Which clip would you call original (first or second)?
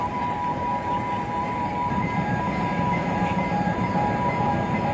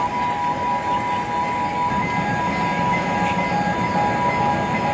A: second